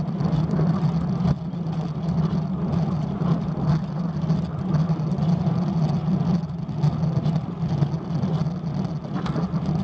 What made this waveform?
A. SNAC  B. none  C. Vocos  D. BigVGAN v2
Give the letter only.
B